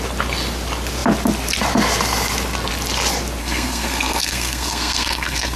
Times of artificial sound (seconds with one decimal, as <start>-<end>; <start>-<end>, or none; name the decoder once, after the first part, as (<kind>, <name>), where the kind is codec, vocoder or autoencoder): 3.4-5.6 (codec, SNAC)